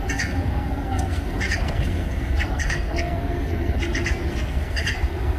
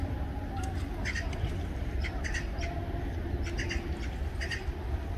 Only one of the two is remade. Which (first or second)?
first